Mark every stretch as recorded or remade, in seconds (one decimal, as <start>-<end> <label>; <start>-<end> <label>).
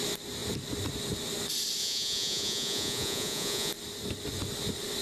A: 0.0-1.8 recorded; 1.8-3.7 remade; 3.7-5.0 recorded